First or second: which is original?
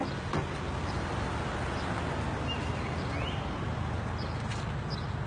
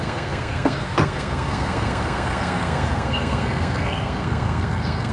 first